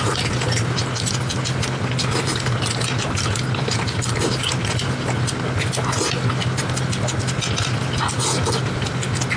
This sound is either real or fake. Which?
real